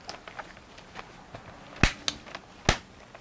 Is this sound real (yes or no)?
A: yes